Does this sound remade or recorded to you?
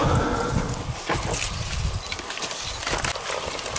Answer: recorded